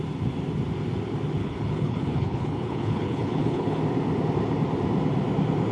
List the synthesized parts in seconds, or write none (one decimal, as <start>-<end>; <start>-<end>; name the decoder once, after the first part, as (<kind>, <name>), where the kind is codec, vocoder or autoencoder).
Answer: 1.4-3.8 (codec, HILCodec)